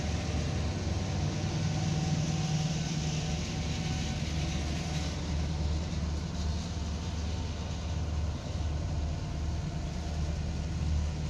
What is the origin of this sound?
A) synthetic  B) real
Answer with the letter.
B